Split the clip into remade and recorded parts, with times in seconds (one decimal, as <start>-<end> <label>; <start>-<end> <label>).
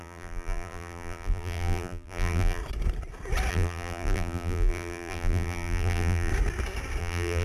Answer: 0.0-2.6 remade; 2.6-3.5 recorded; 3.5-6.3 remade; 6.3-7.0 recorded; 7.0-7.4 remade